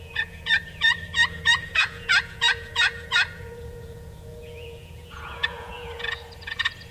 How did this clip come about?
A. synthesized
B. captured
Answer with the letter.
A